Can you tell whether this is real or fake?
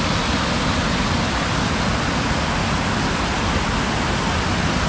real